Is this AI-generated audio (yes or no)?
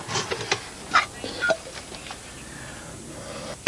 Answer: no